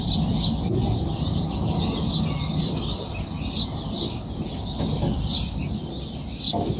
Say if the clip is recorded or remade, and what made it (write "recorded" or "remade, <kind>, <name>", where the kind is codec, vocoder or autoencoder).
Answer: recorded